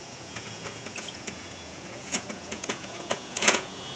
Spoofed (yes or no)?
yes